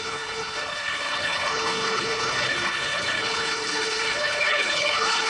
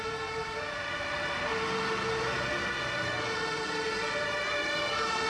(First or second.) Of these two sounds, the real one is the second